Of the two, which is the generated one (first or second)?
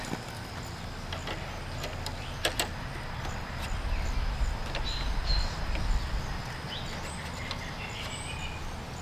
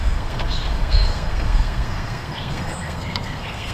second